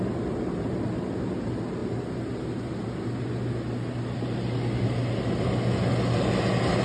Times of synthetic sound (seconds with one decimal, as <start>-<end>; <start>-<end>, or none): none

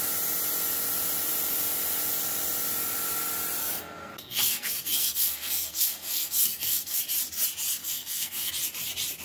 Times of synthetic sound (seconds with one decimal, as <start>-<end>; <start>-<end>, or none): 3.6-7.0; 7.8-8.5

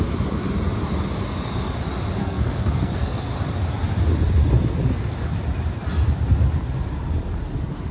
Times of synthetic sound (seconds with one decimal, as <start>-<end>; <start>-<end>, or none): 2.2-3.2

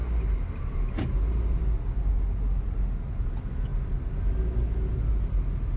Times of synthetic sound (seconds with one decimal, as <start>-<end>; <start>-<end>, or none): none

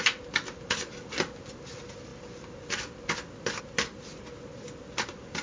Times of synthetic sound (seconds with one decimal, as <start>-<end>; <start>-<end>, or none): none

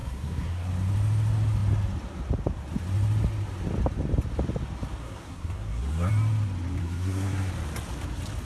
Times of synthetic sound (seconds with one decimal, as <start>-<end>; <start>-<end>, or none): 0.0-0.7; 5.0-6.1; 6.8-7.5